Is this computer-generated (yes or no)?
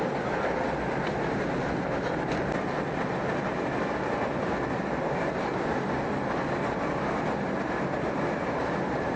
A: no